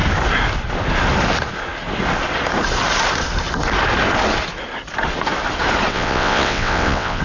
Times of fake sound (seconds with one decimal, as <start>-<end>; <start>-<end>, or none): 5.9-7.2